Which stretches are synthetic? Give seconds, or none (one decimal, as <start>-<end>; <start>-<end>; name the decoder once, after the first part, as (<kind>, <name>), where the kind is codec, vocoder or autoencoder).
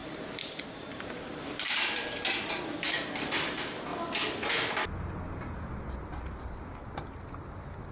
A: 0.0-2.5 (vocoder, BigVGAN v2)